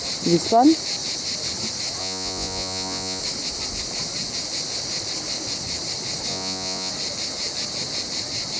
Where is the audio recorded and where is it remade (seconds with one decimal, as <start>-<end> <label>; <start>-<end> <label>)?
0.0-2.0 recorded; 2.0-3.2 remade; 3.2-6.3 recorded; 6.3-6.9 remade; 6.9-8.6 recorded